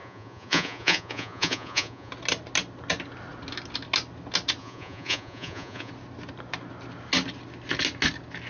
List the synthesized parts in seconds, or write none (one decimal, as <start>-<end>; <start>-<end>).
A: 0.0-2.1; 4.6-5.9